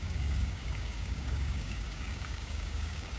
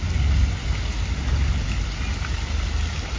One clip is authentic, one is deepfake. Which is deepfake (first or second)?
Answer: first